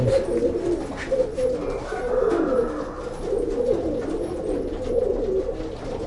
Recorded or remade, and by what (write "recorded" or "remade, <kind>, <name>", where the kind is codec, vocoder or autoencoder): recorded